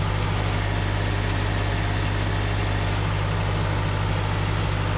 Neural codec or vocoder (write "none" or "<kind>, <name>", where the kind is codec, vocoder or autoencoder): none